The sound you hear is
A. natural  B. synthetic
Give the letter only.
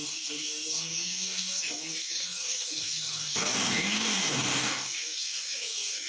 B